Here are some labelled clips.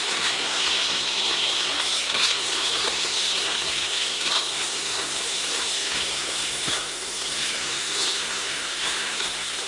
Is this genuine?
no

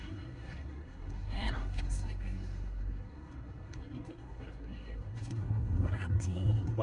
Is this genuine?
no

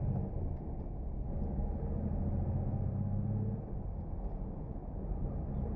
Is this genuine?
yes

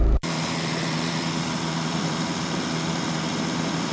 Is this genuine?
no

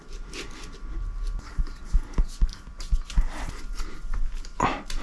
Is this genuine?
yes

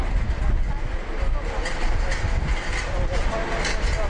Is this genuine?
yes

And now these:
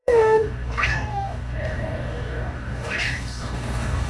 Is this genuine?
no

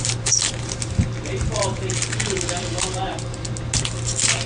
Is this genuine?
yes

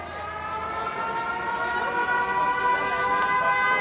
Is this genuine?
yes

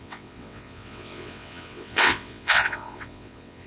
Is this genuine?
no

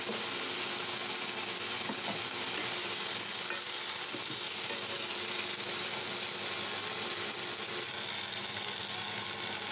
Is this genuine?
yes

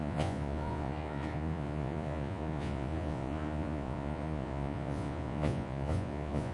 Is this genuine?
no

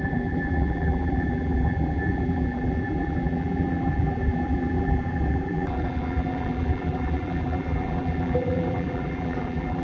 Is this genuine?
no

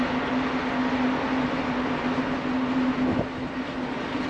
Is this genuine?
yes